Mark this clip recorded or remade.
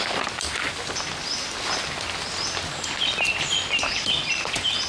recorded